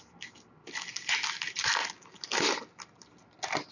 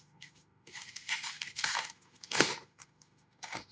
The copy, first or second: second